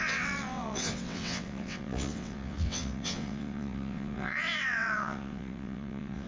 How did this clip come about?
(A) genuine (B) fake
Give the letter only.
B